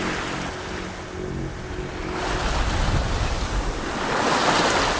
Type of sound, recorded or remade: recorded